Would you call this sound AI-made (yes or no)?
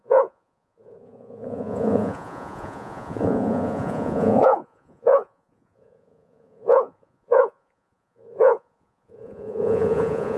yes